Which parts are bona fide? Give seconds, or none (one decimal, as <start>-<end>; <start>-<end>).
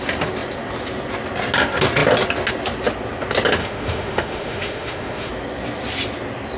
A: 0.0-3.6; 5.3-6.6